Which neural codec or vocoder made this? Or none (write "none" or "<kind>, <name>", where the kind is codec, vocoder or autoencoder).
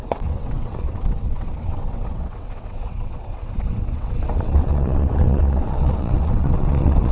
vocoder, WaveNeXt